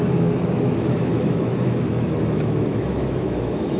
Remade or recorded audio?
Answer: remade